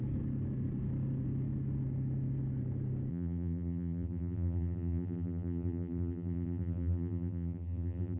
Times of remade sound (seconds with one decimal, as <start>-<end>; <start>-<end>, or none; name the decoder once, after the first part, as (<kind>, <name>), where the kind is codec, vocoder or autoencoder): 3.1-8.2 (vocoder, BigVGAN v2)